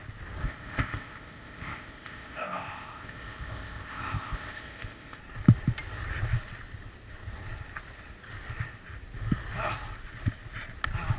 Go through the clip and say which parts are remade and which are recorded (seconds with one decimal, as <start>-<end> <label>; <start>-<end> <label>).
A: 0.0-0.4 recorded; 0.4-5.2 remade; 5.2-11.2 recorded